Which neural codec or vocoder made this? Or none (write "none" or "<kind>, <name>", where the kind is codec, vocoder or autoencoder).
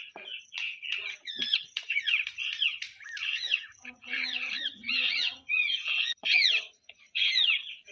vocoder, Vocos